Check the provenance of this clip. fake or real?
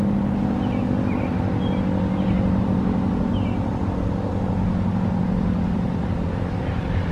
real